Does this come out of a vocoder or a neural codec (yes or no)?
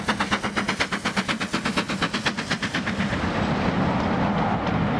no